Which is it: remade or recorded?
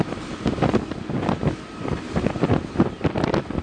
recorded